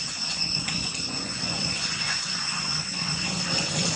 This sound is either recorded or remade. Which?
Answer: remade